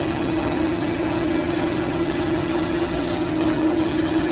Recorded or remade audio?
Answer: remade